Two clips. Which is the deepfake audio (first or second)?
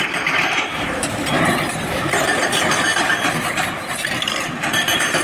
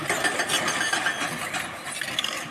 first